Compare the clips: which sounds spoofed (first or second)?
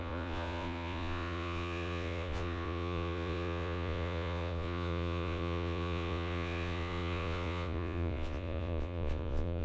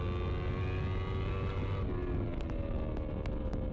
first